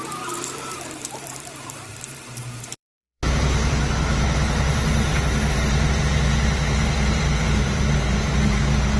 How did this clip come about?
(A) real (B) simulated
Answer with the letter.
B